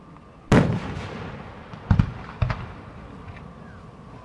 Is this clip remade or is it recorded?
recorded